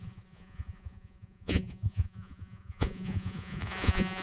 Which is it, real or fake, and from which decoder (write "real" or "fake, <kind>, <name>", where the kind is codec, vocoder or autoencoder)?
fake, vocoder, Vocos